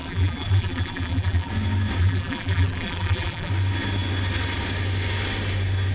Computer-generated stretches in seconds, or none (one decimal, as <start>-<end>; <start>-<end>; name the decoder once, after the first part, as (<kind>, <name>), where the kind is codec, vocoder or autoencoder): 0.0-1.5 (vocoder, BigVGAN v2); 2.0-3.5